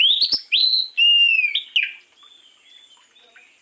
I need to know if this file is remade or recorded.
recorded